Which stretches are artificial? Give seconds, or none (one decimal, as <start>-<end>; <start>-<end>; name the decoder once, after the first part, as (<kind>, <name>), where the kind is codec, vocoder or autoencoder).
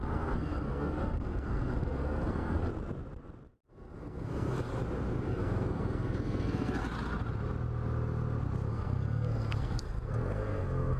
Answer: 0.0-2.7 (codec, SNAC); 3.7-4.7; 5.2-6.8; 8.7-11.0